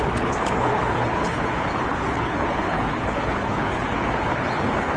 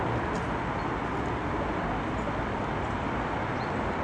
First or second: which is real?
second